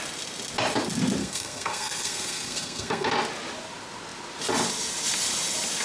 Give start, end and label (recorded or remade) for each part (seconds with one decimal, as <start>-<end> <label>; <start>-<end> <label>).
0.0-1.2 recorded; 1.2-3.1 remade; 3.1-5.8 recorded